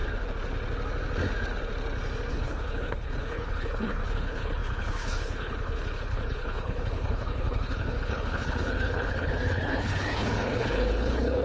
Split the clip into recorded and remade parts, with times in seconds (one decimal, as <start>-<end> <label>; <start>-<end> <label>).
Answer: 0.0-2.3 recorded; 2.3-11.4 remade